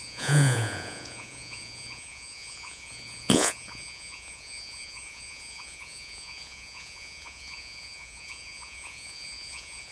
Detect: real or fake fake